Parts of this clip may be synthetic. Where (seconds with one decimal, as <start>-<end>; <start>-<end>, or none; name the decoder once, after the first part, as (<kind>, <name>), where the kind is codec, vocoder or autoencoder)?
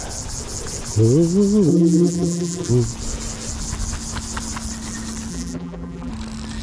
1.7-2.7 (vocoder, BigVGAN v2); 5.3-6.1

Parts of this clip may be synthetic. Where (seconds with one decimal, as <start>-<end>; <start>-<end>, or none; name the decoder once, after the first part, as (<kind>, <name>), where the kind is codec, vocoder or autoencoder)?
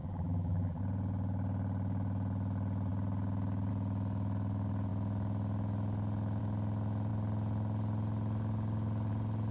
0.0-0.8 (vocoder, BigVGAN v2)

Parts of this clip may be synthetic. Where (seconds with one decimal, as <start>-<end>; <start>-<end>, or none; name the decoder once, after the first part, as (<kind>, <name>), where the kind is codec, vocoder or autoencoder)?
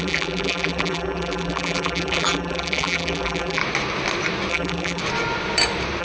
0.0-3.6 (vocoder, BigVGAN v2); 4.5-5.0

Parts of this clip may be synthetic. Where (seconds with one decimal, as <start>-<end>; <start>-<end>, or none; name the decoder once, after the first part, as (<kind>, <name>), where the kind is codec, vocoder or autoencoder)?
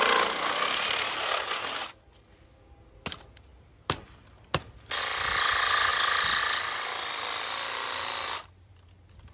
none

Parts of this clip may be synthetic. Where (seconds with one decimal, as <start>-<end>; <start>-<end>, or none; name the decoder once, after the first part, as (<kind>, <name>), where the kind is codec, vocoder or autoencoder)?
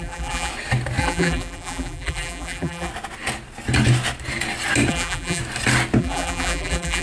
0.0-0.5 (vocoder, BigVGAN v2); 1.0-2.9; 4.9-5.4; 6.0-7.0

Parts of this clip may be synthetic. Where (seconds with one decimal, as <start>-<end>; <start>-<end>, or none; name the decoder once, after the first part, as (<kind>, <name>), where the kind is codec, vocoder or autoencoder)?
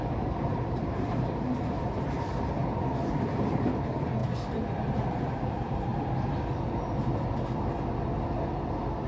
0.0-4.2 (vocoder, BigVGAN v2); 4.7-5.9